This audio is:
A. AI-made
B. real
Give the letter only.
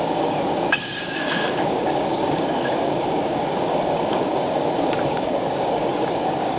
A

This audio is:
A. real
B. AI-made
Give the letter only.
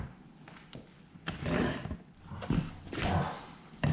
B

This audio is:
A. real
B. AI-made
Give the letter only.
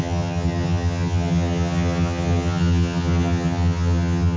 B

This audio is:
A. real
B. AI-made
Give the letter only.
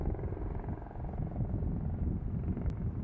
A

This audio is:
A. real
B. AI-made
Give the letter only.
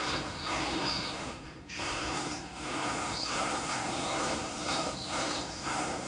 B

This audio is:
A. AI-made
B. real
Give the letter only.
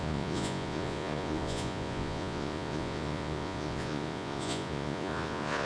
A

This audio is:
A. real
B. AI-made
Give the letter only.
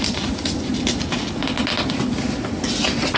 A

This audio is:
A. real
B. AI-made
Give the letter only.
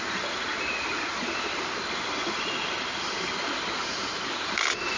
A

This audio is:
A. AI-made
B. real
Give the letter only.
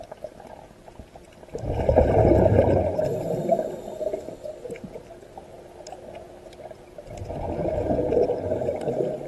B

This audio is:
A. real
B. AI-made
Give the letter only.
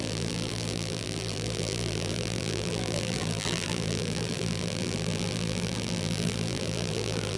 B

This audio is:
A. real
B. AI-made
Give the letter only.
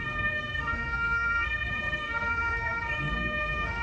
B